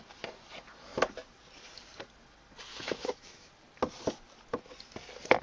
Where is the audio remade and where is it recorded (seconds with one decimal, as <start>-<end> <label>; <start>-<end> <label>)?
0.0-2.7 recorded; 2.7-3.5 remade; 3.5-5.4 recorded